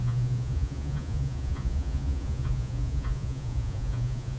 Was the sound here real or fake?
fake